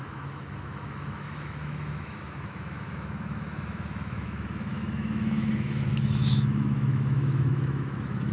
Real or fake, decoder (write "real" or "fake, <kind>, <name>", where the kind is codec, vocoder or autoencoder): fake, autoencoder, DAC-VAE